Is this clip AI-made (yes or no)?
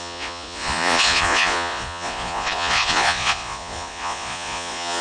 yes